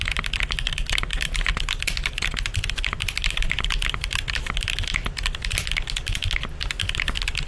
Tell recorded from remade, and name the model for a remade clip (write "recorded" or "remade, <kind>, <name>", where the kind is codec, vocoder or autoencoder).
recorded